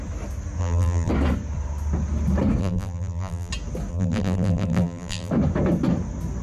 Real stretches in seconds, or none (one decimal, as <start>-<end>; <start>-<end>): 0.0-0.6; 1.1-2.6; 3.5-3.9; 5.3-6.4